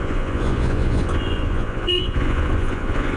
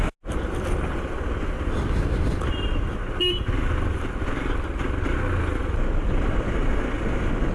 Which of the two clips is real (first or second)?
second